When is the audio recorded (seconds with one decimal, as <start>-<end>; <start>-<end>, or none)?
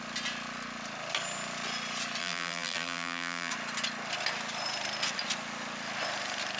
0.0-2.2; 3.5-6.6